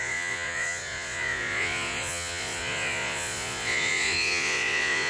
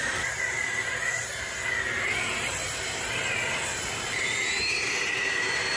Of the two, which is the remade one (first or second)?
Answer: first